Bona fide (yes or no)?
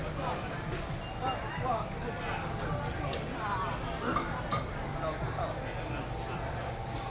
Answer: yes